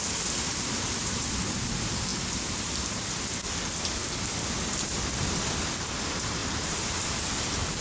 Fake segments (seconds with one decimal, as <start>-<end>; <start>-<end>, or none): 0.5-1.3; 6.4-7.3